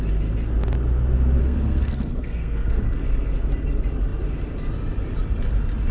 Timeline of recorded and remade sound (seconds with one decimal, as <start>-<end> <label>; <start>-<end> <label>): 0.0-1.4 recorded; 1.4-2.8 remade; 2.8-5.9 recorded